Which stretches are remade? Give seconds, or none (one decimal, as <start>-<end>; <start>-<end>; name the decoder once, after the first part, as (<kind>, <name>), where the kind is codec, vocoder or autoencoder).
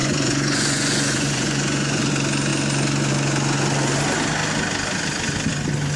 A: 0.0-2.1 (vocoder, Vocos)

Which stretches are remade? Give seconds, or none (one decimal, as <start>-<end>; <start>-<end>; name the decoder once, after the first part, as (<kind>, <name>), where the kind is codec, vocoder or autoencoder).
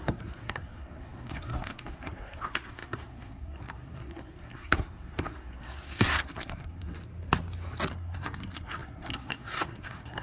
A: 0.0-7.0 (codec, SNAC); 7.9-10.2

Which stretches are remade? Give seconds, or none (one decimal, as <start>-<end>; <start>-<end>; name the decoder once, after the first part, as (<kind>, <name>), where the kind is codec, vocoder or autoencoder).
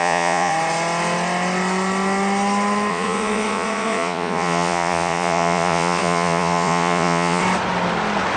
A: 0.0-0.5 (vocoder, Vocos); 2.9-7.4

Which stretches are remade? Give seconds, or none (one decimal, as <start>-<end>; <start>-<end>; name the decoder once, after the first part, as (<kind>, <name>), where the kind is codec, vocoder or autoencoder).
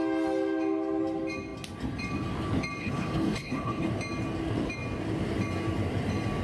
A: 2.8-3.9 (codec, HILCodec)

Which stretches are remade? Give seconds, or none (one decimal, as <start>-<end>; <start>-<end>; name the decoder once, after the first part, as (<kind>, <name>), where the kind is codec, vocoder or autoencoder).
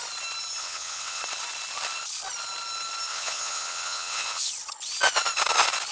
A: 0.6-1.2 (vocoder, WaveNeXt); 3.1-4.5